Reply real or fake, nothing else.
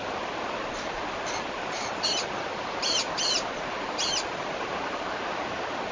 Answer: real